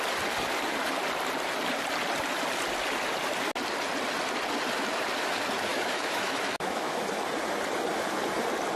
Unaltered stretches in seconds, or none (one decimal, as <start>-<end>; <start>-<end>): 0.0-5.7; 7.0-8.8

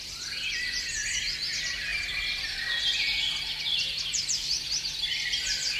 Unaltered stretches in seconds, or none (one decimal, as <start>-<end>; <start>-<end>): 0.0-5.8

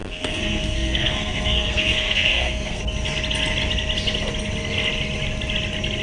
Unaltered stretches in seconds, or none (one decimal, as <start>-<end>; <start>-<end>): 2.8-6.0